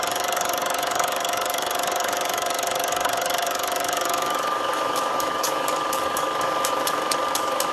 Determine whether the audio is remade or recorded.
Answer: remade